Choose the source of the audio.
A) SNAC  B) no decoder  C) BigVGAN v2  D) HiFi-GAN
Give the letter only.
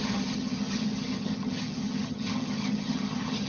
D